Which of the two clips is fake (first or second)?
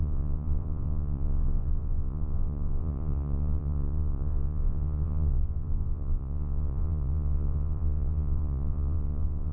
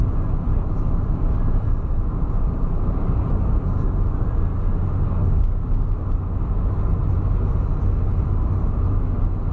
first